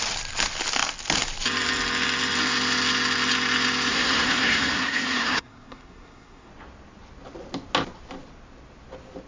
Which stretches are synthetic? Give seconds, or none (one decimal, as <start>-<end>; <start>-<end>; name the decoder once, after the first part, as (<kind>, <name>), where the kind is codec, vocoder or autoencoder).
3.9-6.5 (codec, SNAC)